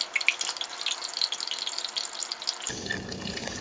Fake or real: real